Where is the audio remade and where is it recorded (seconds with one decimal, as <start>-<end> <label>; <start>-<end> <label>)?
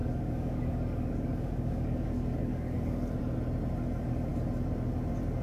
0.0-3.2 remade; 3.2-5.4 recorded